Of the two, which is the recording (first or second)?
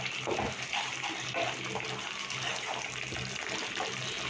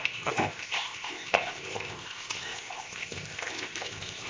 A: first